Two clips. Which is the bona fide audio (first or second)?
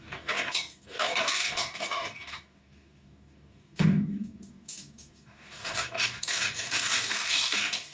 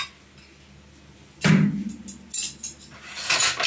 second